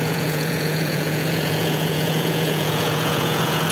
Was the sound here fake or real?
fake